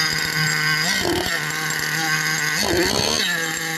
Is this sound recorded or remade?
recorded